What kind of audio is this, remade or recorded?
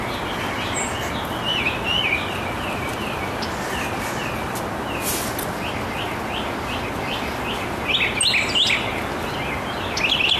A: recorded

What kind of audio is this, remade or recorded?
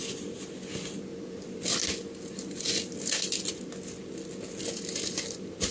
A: recorded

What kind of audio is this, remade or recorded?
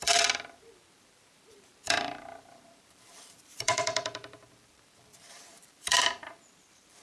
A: remade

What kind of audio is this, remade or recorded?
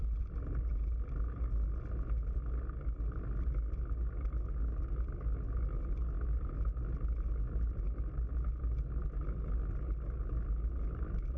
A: recorded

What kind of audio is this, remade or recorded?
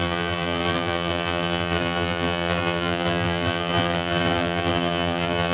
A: remade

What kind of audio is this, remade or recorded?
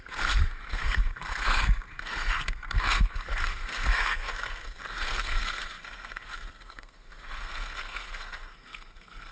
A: remade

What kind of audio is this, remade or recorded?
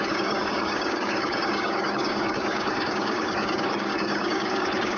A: remade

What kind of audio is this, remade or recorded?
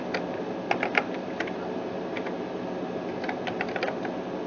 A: recorded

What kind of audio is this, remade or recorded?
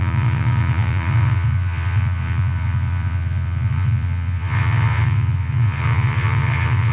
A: remade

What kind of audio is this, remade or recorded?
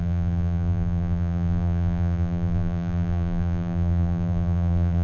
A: remade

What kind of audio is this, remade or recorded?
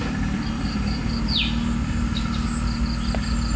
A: recorded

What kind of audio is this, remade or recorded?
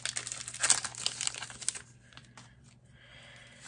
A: recorded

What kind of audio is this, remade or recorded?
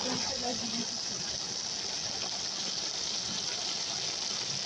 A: recorded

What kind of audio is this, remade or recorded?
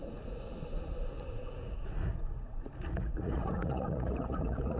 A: remade